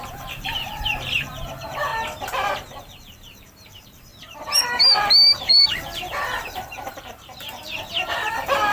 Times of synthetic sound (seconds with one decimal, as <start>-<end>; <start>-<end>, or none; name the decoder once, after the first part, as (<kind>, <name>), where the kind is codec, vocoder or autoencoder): 0.0-1.9 (vocoder, BigVGAN v2); 2.8-4.1; 5.4-8.7